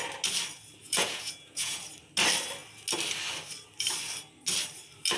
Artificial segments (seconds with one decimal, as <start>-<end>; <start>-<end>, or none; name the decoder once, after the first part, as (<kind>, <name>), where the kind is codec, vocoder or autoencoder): 0.8-1.8 (vocoder, Vocos)